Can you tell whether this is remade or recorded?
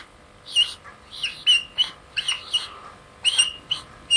recorded